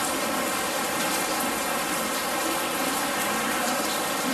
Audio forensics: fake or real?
real